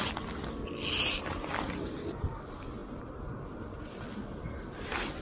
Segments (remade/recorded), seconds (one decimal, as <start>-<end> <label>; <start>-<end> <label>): 0.0-5.2 recorded